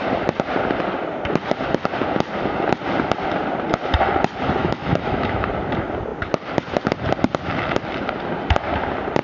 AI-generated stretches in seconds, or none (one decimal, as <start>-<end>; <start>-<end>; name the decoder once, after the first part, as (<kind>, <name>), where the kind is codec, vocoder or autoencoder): 4.6-5.5 (autoencoder, DAC-VAE)